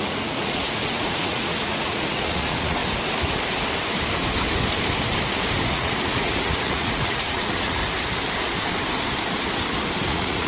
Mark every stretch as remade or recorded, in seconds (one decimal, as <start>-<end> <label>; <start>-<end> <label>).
0.0-2.8 remade; 2.8-5.7 recorded; 5.7-7.8 remade; 7.8-10.1 recorded; 10.1-10.5 remade